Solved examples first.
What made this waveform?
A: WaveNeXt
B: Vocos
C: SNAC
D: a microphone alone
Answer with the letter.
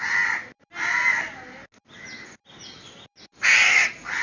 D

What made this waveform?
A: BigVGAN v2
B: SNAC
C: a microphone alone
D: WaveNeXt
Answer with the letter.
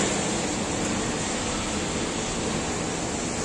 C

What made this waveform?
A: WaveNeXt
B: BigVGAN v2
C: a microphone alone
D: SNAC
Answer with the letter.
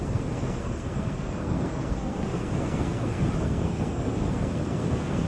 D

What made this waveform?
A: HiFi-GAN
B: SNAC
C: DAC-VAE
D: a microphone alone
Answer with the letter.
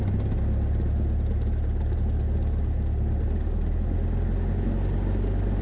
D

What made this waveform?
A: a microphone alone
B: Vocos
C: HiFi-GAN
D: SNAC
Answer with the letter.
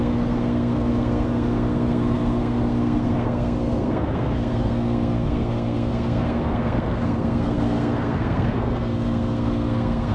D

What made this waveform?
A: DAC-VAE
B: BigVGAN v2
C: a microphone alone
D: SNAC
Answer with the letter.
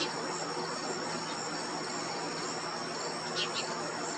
C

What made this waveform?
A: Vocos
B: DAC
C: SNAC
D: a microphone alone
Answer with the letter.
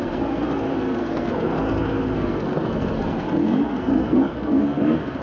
C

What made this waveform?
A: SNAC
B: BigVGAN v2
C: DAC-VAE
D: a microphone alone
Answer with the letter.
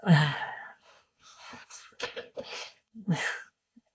A